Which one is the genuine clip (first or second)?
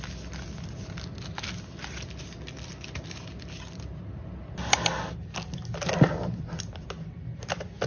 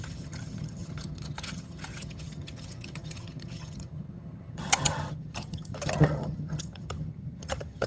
first